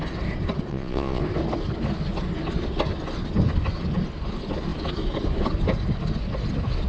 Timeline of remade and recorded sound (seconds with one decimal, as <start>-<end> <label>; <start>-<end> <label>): 0.0-0.7 recorded; 0.7-1.2 remade; 1.2-6.9 recorded